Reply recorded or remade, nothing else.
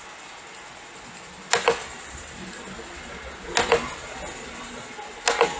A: recorded